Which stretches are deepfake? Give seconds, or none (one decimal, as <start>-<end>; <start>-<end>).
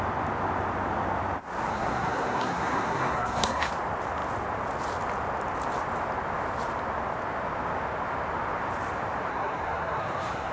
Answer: 1.7-3.7; 9.3-10.5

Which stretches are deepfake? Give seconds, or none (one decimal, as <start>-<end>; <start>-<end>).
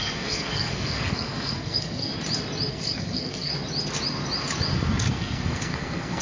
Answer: 0.0-2.1; 2.7-3.5; 5.1-6.2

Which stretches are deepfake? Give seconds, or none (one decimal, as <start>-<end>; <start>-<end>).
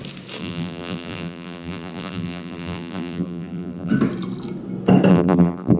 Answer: 0.4-3.9; 5.1-5.8